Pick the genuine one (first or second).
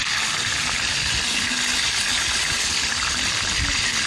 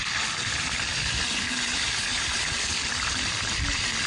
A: first